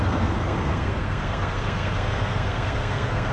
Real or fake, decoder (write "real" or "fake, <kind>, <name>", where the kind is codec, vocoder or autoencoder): fake, codec, SNAC